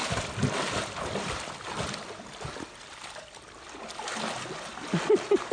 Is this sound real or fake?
real